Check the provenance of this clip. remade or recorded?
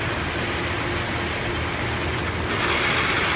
recorded